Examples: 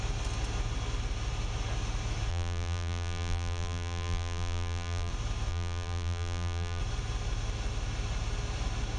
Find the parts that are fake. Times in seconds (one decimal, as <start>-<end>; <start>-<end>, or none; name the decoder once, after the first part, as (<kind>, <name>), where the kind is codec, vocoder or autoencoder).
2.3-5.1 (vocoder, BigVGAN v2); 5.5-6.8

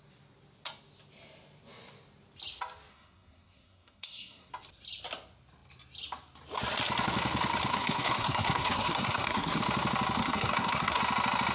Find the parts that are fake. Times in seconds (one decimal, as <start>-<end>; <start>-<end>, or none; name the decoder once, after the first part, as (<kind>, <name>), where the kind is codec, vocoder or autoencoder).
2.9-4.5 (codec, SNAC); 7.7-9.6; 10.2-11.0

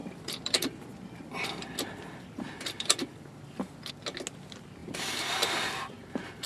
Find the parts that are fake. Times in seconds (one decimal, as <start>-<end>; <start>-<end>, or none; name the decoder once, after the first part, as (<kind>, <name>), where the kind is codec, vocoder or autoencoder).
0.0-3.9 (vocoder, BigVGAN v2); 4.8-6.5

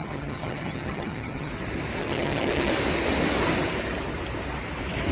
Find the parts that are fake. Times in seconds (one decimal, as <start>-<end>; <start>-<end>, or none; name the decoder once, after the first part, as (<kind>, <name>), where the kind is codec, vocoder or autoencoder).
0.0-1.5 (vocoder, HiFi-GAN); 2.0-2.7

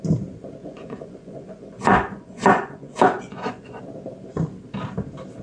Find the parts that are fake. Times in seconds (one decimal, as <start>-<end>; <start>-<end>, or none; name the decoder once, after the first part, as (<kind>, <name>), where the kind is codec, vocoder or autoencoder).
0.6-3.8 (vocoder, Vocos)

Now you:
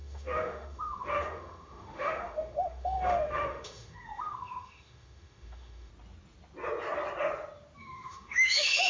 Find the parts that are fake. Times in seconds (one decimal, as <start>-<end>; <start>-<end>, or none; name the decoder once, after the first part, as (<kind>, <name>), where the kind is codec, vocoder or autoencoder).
0.0-5.9 (autoencoder, DAC-VAE); 7.8-8.9

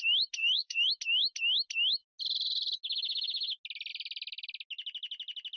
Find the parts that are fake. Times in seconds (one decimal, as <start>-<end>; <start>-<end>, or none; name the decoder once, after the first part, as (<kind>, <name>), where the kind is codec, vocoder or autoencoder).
0.4-0.9 (autoencoder, DAC-VAE)